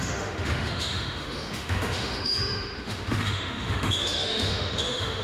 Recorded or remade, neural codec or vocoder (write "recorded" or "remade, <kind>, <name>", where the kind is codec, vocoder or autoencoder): remade, autoencoder, DAC-VAE